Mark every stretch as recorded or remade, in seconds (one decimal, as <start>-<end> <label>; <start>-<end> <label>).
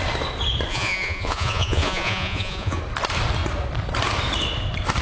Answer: 0.0-0.7 recorded; 0.7-2.8 remade; 2.8-5.0 recorded